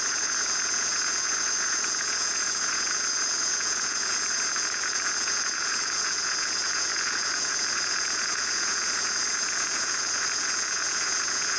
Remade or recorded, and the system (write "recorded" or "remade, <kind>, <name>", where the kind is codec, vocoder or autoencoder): remade, vocoder, Vocos